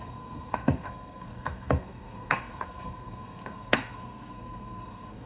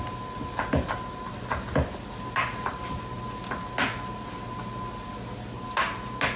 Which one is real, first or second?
second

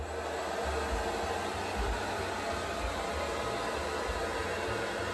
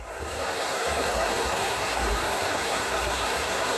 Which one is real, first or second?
first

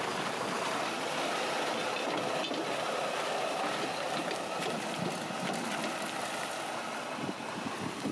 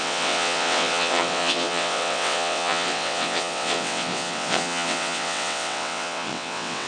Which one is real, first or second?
first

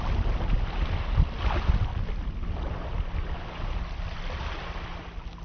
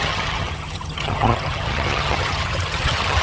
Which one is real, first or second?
first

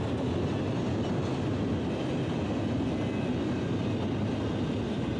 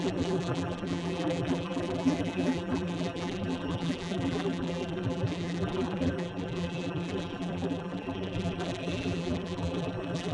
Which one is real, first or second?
first